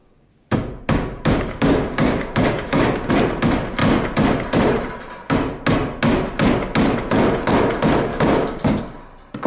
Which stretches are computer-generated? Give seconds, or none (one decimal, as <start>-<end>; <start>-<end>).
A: 0.0-3.1; 8.1-8.8